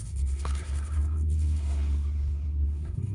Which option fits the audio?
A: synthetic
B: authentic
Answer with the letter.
A